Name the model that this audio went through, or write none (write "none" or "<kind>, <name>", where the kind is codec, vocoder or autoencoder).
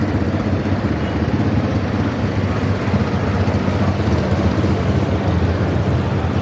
none